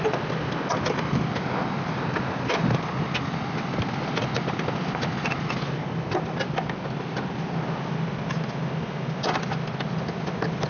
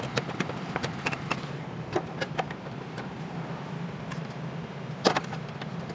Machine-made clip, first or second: second